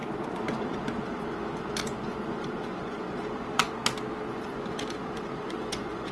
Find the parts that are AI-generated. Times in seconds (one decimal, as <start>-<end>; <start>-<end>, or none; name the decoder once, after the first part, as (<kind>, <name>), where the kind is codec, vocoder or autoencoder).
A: 0.0-3.8 (vocoder, Vocos); 4.3-6.1